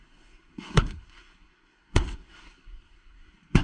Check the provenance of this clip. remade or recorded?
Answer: remade